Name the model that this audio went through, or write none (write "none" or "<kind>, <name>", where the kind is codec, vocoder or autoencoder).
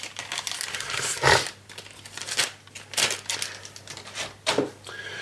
none